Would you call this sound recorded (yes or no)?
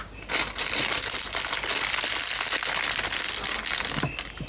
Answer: yes